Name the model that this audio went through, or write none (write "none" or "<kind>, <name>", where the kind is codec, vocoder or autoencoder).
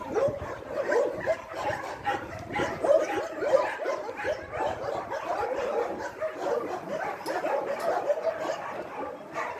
vocoder, BigVGAN v2